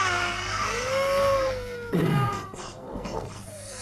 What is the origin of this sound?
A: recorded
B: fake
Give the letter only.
B